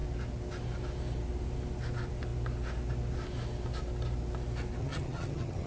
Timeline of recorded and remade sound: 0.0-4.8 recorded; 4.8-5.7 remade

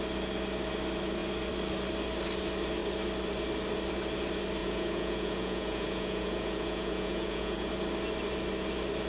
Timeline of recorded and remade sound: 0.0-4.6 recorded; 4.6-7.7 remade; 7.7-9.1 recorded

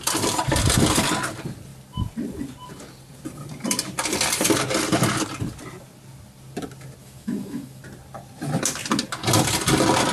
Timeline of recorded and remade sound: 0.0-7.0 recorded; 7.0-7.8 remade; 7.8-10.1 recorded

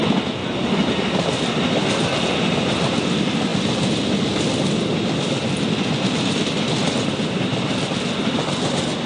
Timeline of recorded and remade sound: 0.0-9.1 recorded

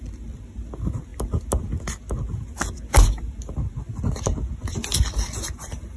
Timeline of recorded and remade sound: 0.0-6.0 recorded

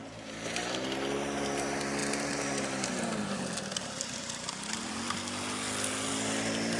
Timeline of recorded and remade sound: 0.0-6.8 recorded